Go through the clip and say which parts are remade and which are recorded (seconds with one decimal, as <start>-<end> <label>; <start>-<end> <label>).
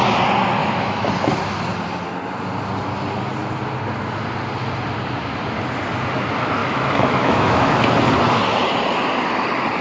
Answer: 0.0-0.6 recorded; 0.6-1.1 remade; 1.1-6.6 recorded; 6.6-7.7 remade; 7.7-9.8 recorded